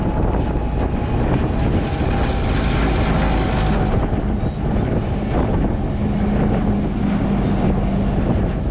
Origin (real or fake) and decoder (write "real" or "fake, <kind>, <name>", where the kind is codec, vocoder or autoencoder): real